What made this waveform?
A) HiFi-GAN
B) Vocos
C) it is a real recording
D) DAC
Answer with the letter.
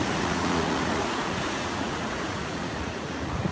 B